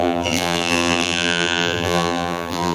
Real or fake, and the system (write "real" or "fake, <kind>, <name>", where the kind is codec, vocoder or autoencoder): fake, vocoder, BigVGAN v2